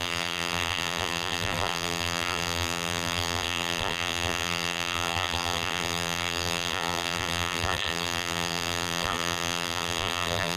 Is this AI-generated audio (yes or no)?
yes